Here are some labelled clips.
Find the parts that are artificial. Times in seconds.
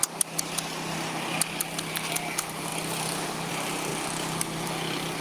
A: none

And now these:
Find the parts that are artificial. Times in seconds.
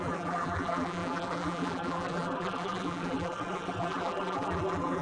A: 0.0-5.0